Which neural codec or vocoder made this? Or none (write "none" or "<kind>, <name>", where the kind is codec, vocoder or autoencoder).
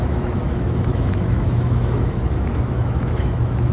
autoencoder, DAC-VAE